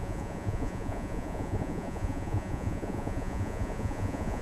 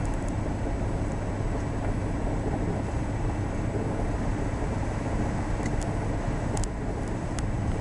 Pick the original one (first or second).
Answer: second